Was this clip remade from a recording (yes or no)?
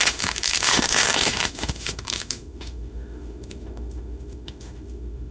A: yes